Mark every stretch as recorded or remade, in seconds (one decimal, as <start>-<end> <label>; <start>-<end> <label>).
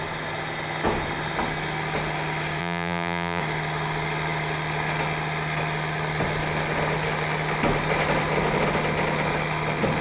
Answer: 0.0-2.6 recorded; 2.6-3.4 remade; 3.4-10.0 recorded